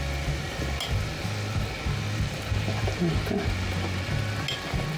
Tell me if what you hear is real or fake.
real